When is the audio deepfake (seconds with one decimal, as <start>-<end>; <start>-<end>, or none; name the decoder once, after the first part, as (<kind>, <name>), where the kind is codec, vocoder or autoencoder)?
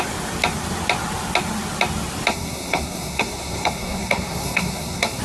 2.3-5.2 (codec, SNAC)